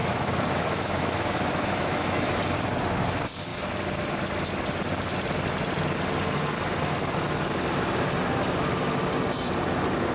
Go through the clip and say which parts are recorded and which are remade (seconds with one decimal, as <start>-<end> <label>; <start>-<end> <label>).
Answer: 0.0-2.4 remade; 2.4-10.1 recorded